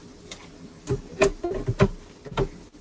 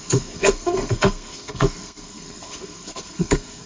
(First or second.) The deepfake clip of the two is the second